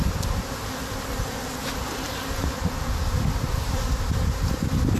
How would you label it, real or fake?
fake